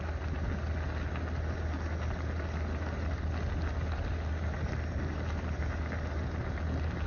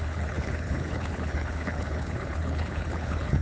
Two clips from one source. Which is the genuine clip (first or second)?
first